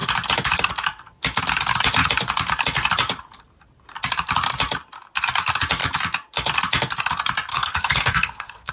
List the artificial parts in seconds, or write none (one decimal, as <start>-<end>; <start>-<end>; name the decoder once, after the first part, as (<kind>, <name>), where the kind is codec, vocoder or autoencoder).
7.5-8.7 (codec, SNAC)